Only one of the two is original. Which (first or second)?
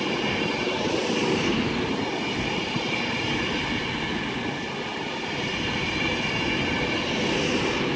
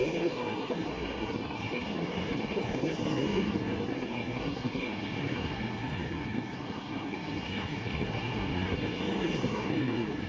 first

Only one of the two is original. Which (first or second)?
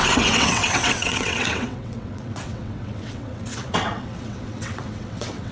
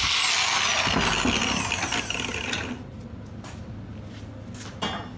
second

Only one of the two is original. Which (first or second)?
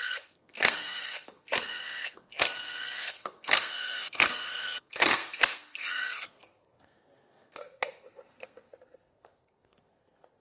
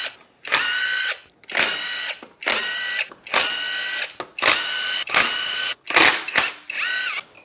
second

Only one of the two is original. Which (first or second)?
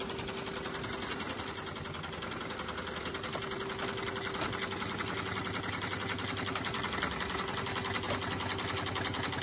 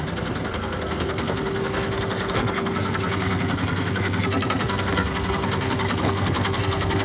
first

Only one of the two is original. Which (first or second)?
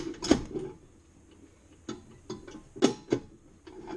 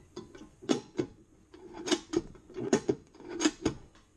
first